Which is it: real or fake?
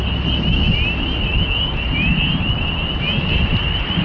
real